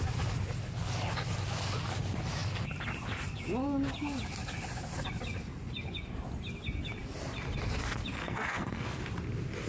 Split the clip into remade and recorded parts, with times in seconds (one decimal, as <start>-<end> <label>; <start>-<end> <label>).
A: 0.0-8.1 recorded; 8.1-9.0 remade; 9.0-9.7 recorded

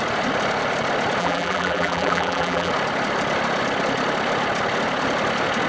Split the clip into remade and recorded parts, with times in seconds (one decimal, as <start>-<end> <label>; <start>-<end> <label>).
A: 0.0-1.2 recorded; 1.2-2.7 remade; 2.7-5.7 recorded

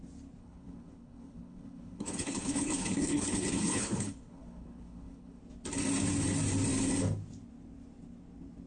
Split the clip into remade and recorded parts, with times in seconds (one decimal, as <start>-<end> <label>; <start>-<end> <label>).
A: 0.0-0.4 recorded; 0.4-5.4 remade; 5.4-8.7 recorded

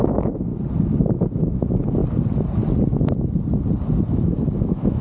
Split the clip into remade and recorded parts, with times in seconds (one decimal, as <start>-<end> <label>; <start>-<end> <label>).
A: 0.0-0.5 remade; 0.5-1.4 recorded; 1.4-2.0 remade; 2.0-4.1 recorded; 4.1-5.0 remade